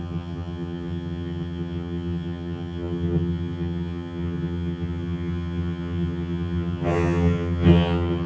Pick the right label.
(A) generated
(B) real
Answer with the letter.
A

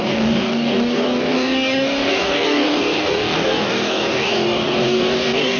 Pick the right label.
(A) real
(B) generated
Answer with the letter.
B